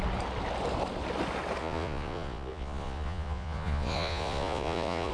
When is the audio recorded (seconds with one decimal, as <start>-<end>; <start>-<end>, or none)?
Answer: 0.0-1.6